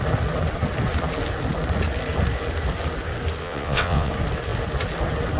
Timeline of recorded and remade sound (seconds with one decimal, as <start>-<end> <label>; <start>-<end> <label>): 0.0-3.4 recorded; 3.4-4.1 remade; 4.1-5.4 recorded